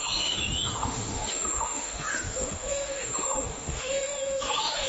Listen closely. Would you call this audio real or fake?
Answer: fake